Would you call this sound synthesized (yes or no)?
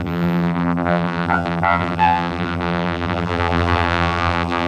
yes